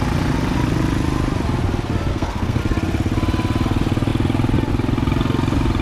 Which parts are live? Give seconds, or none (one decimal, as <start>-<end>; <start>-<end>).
0.0-2.1; 2.6-5.8

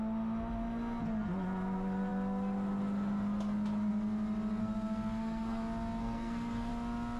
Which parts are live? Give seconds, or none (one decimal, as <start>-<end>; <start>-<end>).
0.0-4.6; 5.6-6.0; 6.7-7.2

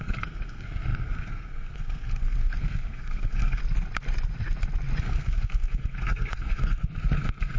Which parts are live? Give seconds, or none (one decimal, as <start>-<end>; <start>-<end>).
3.6-5.0

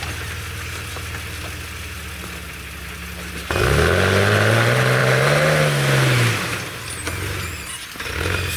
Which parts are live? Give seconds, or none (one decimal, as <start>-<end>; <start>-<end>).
0.0-8.6

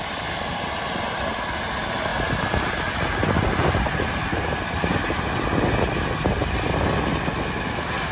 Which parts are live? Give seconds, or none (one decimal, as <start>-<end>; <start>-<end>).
0.0-8.1

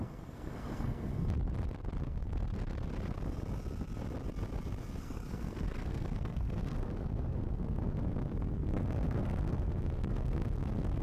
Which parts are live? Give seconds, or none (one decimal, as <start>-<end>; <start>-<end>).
1.1-2.0; 2.5-5.0

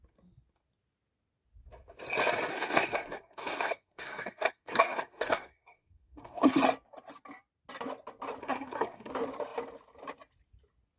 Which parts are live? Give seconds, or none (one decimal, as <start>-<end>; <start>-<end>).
0.0-2.5; 6.6-8.4; 9.1-11.0

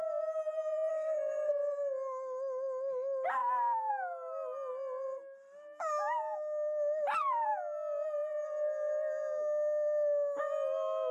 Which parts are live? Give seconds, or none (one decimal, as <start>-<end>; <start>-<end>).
0.0-0.9; 1.5-11.1